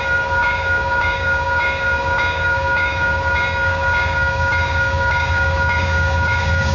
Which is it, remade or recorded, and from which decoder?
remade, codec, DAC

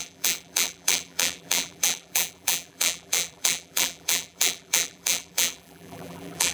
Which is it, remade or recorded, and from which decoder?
remade, vocoder, BigVGAN v2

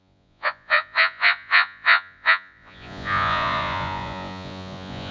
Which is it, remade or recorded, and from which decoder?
remade, vocoder, Vocos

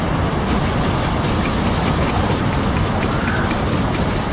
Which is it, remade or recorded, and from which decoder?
recorded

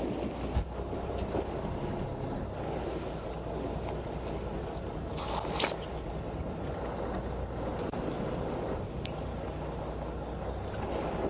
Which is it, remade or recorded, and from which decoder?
recorded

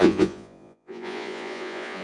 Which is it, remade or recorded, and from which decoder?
remade, vocoder, Vocos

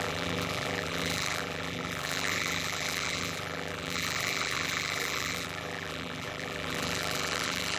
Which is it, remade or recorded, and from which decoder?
remade, vocoder, BigVGAN v2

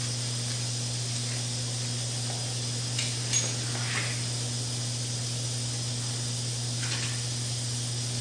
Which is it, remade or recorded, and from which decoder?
recorded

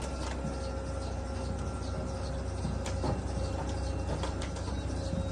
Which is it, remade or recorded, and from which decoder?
recorded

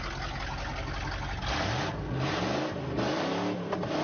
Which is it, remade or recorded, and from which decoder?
recorded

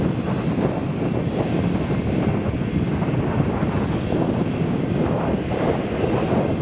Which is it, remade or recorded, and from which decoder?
recorded